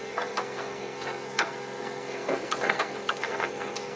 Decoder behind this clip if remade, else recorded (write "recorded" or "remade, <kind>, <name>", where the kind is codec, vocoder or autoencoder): remade, codec, SNAC